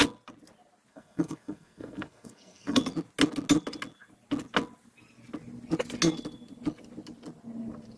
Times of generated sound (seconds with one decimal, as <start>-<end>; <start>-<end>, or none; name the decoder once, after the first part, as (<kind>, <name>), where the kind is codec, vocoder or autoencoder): 0.9-2.8 (codec, SNAC)